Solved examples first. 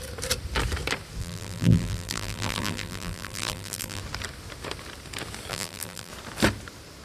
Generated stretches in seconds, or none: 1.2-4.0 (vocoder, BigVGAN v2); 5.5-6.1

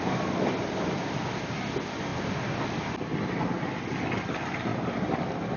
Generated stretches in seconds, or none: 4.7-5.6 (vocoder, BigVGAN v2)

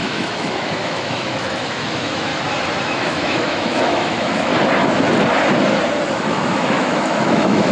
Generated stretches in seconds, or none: 0.0-2.3 (autoencoder, DAC-VAE); 2.8-4.5; 6.1-7.7

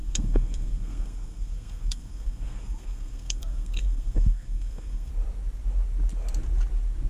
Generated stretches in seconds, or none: 0.0-5.1 (codec, SNAC)

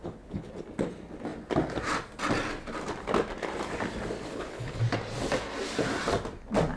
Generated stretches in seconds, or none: 0.0-0.5 (codec, HILCodec); 4.3-4.8

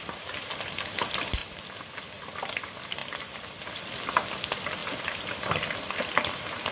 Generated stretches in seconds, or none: none

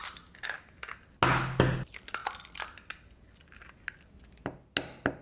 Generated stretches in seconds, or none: none

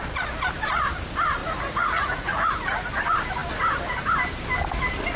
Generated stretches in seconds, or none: 1.4-2.9 (vocoder, Vocos)